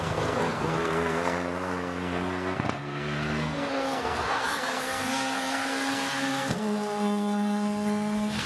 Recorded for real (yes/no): no